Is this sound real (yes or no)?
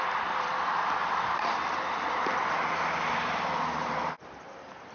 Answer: no